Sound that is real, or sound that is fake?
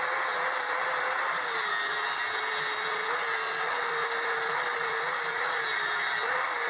real